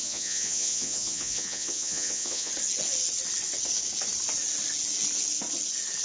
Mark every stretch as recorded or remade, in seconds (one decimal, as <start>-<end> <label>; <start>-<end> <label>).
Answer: 0.0-2.5 remade; 2.5-6.0 recorded